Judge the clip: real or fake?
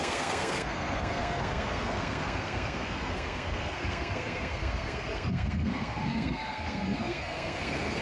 fake